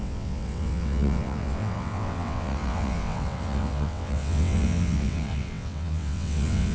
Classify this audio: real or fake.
fake